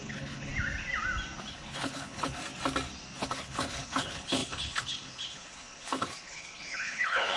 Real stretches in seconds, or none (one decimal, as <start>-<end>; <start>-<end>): 0.5-1.5; 2.4-3.2